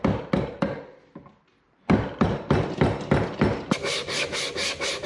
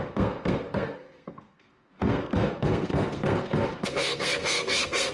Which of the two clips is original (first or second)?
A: first